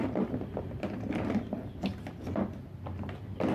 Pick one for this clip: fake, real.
real